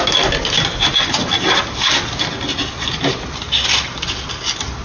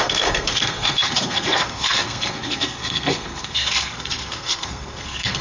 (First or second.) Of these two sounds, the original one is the first